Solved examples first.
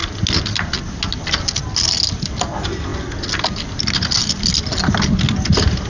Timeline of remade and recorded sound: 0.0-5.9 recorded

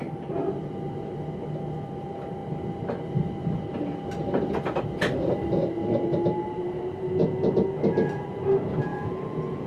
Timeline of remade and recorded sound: 0.0-8.9 recorded; 8.9-9.7 remade